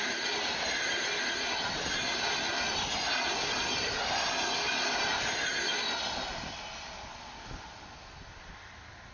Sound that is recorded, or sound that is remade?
recorded